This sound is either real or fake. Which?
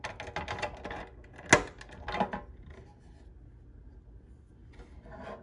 real